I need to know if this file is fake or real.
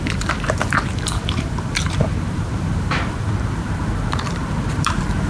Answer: fake